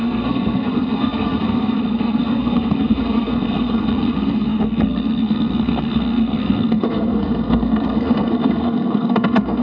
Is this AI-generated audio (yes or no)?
yes